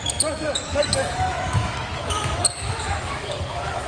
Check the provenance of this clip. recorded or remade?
remade